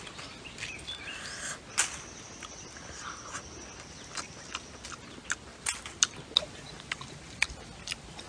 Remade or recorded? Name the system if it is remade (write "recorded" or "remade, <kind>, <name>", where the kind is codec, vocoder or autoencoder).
recorded